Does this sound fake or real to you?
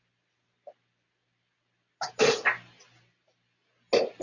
real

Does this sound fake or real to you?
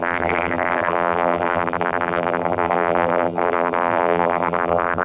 fake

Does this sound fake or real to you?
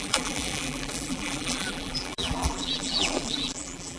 fake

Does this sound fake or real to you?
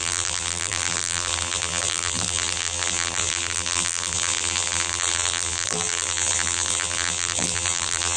fake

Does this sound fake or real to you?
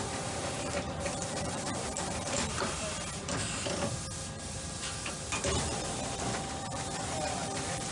fake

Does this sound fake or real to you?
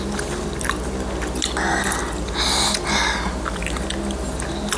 real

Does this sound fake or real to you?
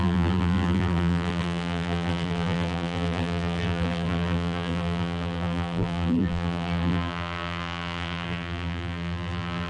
fake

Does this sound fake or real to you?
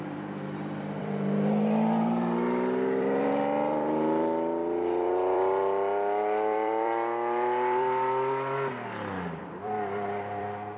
fake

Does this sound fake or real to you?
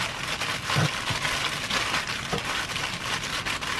real